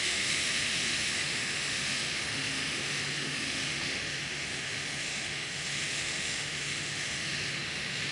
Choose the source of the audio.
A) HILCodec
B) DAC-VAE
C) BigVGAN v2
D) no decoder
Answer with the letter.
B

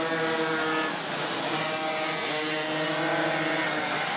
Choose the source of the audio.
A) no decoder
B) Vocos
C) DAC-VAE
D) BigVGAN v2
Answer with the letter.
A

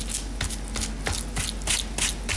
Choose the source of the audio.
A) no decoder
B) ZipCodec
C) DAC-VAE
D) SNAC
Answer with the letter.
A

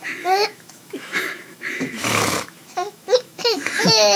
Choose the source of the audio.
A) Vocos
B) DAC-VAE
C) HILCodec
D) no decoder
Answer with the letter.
B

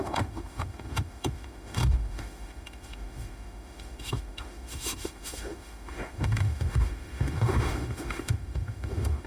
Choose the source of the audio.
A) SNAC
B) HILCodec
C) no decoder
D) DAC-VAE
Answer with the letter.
D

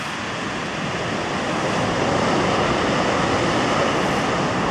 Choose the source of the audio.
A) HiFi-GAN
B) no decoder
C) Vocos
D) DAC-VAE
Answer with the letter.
B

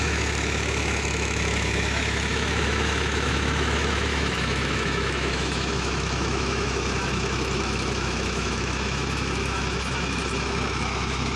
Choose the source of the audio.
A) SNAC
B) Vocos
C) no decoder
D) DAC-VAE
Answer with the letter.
D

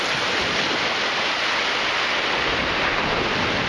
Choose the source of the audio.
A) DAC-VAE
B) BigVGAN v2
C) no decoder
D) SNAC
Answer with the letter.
C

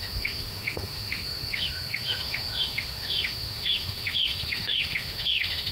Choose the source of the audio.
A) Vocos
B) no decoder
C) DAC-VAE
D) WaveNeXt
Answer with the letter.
C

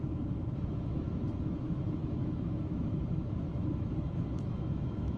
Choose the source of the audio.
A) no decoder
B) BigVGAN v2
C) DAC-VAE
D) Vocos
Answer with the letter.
C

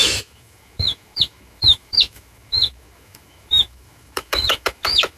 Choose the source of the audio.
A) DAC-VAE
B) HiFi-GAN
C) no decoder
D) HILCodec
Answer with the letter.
A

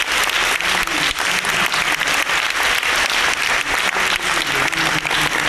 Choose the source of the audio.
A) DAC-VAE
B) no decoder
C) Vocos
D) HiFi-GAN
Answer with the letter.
B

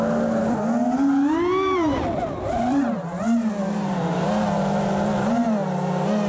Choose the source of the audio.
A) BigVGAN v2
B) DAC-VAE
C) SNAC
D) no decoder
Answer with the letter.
D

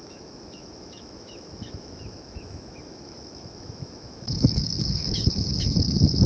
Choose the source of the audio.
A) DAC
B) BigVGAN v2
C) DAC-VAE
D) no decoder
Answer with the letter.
C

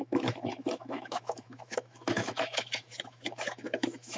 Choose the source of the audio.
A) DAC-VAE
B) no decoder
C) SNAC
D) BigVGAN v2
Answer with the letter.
A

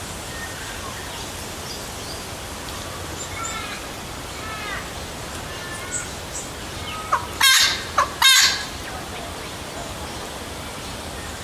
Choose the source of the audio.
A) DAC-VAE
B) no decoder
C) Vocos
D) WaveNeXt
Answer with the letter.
B